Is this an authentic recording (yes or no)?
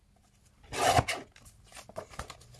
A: yes